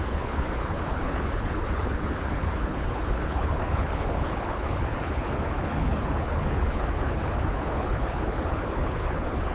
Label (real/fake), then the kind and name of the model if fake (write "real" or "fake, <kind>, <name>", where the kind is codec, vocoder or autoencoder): fake, codec, HILCodec